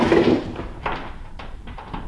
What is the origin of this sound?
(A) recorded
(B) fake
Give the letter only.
B